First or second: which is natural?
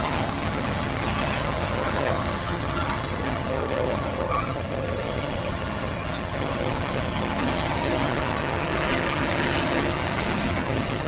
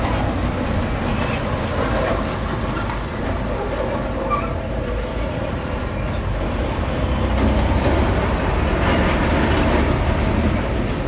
second